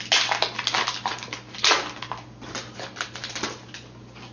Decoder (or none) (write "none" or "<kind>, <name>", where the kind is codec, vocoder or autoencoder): none